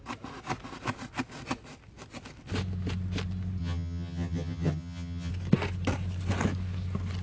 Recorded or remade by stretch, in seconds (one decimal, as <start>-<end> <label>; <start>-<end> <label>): 0.0-3.6 recorded; 3.6-5.3 remade; 5.3-7.2 recorded